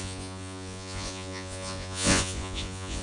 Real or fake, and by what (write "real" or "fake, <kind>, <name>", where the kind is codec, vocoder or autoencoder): fake, vocoder, Vocos